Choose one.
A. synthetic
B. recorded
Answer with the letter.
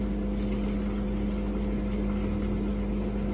B